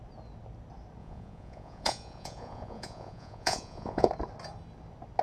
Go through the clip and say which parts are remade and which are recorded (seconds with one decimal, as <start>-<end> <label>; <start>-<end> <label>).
0.0-1.0 recorded; 1.0-4.1 remade; 4.1-5.2 recorded